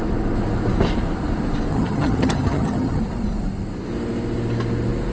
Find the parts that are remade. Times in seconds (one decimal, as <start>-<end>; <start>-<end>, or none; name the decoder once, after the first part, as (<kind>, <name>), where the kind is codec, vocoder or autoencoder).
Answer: 1.7-3.0 (vocoder, HiFi-GAN)